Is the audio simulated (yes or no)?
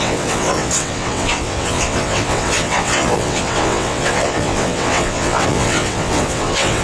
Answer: yes